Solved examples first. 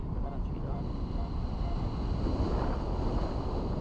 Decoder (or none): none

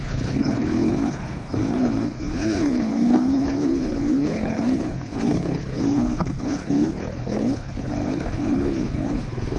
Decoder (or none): codec, HILCodec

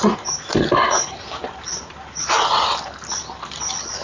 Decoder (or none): none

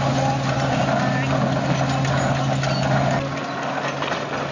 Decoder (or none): none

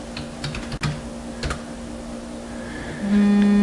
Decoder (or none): none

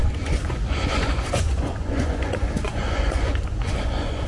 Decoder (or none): vocoder, Vocos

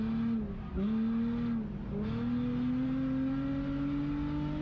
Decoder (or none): none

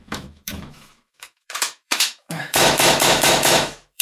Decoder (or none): autoencoder, DAC-VAE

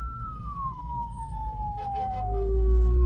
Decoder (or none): codec, SNAC